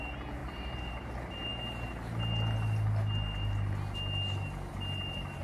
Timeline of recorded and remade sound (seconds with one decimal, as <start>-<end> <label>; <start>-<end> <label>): 0.0-0.4 recorded; 0.4-1.1 remade; 1.1-5.4 recorded